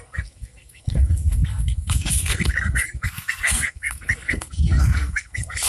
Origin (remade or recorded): remade